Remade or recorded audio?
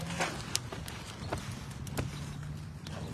recorded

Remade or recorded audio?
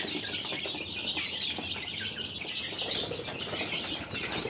recorded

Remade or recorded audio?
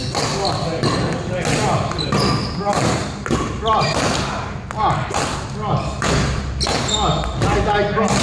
recorded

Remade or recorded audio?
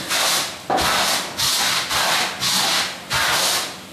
recorded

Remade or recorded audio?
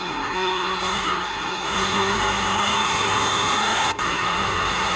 remade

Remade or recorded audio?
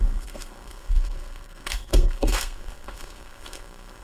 remade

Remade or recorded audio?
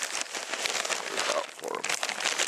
recorded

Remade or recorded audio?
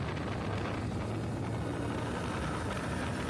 recorded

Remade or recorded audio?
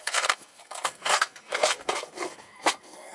remade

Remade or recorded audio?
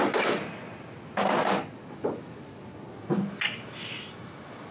recorded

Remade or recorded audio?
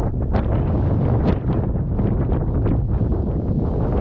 recorded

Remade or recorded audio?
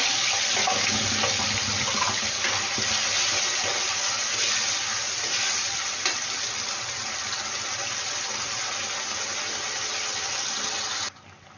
recorded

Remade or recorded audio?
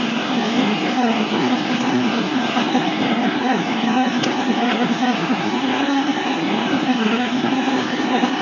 remade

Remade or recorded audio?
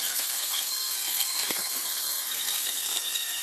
remade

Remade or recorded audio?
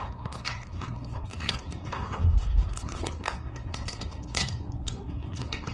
remade